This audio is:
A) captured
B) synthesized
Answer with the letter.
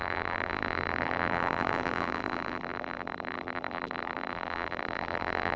B